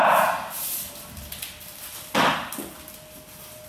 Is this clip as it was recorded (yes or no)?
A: yes